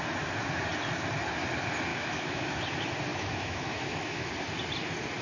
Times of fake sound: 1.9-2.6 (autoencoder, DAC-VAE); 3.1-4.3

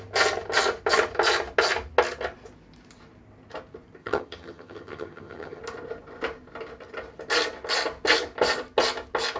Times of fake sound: 4.0-5.6 (vocoder, HiFi-GAN)

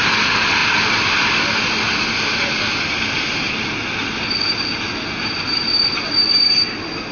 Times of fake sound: none

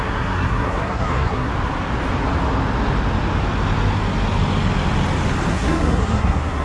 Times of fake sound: 0.0-1.5 (codec, SNAC); 5.5-6.6

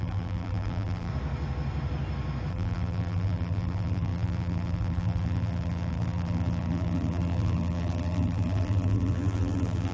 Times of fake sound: 0.0-1.1 (vocoder, BigVGAN v2); 2.5-9.9

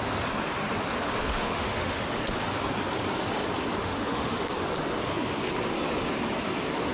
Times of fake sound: 1.3-2.0 (autoencoder, DAC-VAE); 3.8-4.4